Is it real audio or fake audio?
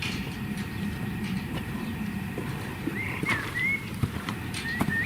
fake